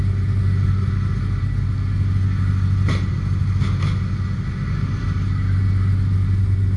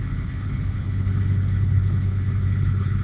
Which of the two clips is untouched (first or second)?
first